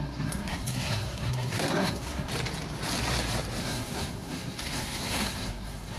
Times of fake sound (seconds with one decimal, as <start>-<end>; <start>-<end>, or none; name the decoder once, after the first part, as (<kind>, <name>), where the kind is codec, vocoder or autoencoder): 0.0-2.3 (codec, SNAC); 3.6-6.0